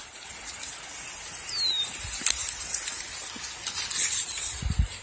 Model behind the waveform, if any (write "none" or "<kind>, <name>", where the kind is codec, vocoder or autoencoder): none